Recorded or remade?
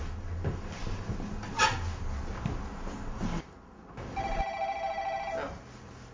recorded